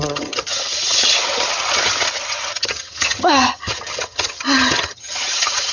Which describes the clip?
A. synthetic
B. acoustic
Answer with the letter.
A